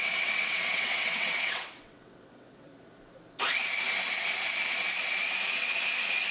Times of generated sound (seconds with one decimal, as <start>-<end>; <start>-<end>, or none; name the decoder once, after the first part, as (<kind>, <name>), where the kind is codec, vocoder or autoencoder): 0.0-2.7 (vocoder, WaveNeXt)